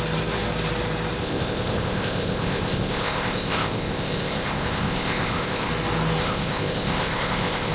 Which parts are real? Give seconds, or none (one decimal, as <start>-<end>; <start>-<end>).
0.0-1.2; 5.7-6.2